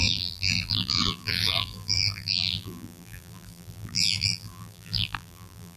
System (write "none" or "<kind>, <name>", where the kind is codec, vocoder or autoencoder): vocoder, BigVGAN v2